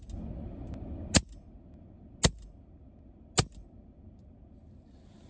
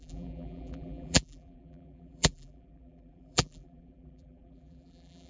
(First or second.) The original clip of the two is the first